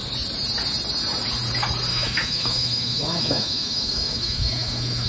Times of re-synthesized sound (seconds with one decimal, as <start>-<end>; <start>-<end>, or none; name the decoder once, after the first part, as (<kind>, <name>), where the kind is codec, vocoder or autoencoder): 1.9-5.1 (autoencoder, DAC-VAE)